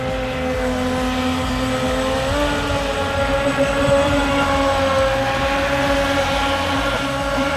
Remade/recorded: recorded